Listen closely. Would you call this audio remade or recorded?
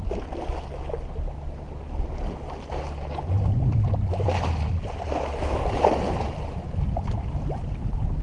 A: recorded